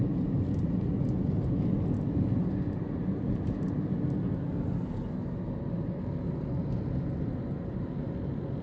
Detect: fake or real real